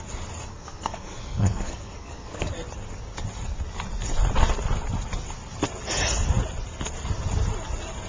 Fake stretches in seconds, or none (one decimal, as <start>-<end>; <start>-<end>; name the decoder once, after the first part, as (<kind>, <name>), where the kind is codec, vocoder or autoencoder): 0.5-2.5 (codec, SNAC)